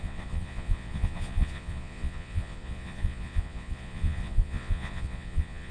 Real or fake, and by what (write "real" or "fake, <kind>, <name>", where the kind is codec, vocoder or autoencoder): fake, vocoder, Vocos